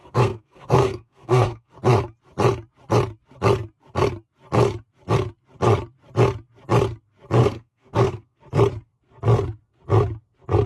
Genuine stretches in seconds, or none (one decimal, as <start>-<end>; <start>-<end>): 1.7-7.4; 8.4-10.7